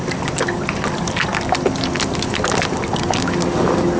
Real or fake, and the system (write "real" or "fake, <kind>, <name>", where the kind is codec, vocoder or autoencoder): real